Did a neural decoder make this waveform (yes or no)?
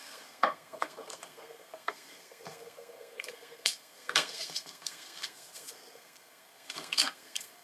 yes